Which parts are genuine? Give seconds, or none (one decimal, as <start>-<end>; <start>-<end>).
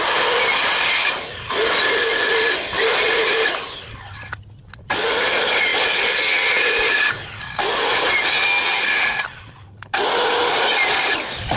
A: 0.0-11.6